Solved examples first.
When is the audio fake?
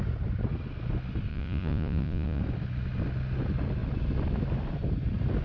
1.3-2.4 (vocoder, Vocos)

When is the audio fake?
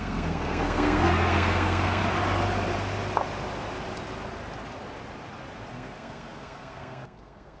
0.0-2.0 (codec, SNAC); 5.7-7.6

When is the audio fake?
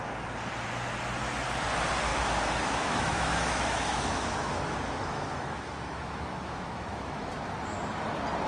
2.1-7.2 (autoencoder, DAC-VAE)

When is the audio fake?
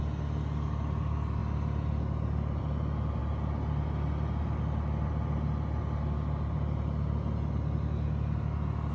none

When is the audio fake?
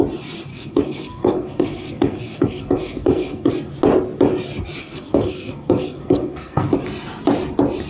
0.5-3.5 (codec, SNAC); 4.8-6.7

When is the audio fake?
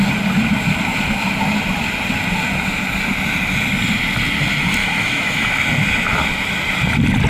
4.8-5.5 (autoencoder, DAC-VAE)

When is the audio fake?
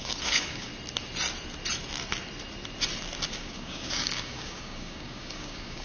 0.0-0.7 (codec, DAC); 3.3-5.8